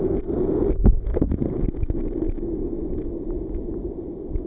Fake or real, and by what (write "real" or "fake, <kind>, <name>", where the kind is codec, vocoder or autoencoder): real